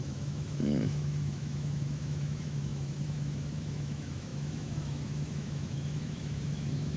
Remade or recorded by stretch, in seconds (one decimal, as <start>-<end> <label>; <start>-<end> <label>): 0.0-7.0 remade